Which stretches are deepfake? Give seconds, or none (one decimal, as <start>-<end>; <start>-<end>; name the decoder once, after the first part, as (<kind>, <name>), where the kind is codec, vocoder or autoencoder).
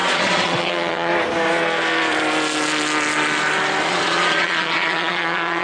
0.0-1.1 (vocoder, Vocos); 3.8-5.6